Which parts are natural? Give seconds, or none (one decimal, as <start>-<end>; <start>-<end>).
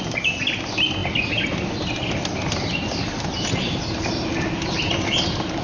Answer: 0.0-5.6